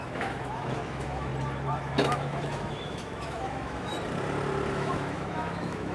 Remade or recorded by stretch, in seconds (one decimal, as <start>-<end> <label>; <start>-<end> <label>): 0.0-1.3 remade; 1.3-1.8 recorded; 1.8-3.9 remade; 3.9-4.7 recorded; 4.7-5.9 remade